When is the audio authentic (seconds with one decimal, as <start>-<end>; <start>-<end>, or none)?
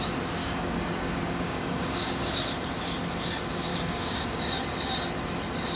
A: 0.0-0.4; 2.4-3.7; 4.5-5.8